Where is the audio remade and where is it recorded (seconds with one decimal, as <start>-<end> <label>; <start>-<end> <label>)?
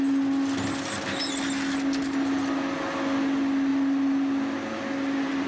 0.0-5.5 recorded